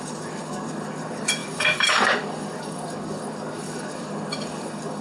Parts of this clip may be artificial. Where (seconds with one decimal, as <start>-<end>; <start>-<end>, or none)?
0.0-5.0